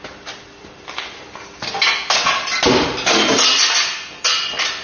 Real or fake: real